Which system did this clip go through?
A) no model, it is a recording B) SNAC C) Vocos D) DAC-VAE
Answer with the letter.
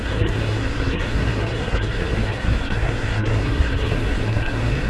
B